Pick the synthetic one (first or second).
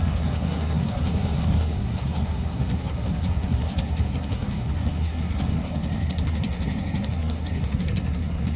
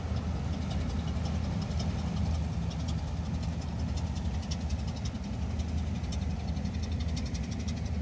first